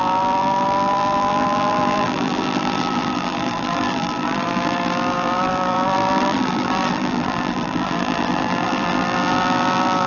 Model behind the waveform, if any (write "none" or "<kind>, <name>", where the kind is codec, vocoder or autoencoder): vocoder, BigVGAN v2